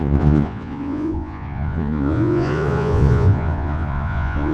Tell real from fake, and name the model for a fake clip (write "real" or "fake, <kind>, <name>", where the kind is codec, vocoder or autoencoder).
fake, vocoder, Vocos